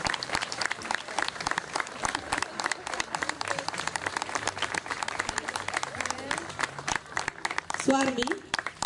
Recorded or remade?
remade